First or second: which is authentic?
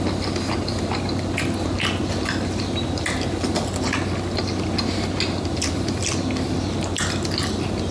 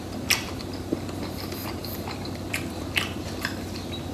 first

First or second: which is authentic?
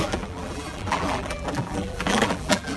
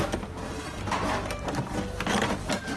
second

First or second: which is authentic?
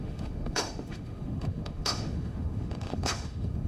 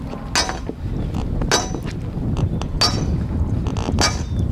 second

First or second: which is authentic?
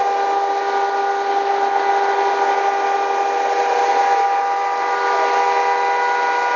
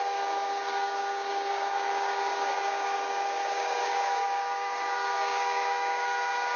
first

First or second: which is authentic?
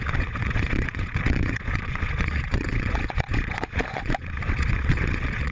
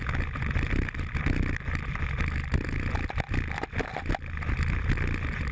second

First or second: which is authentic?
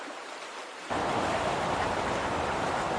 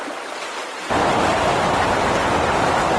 second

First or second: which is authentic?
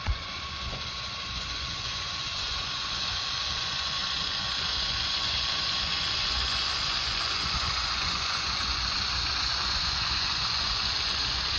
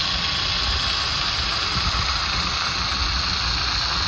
second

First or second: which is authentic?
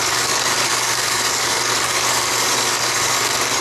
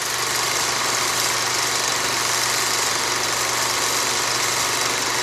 second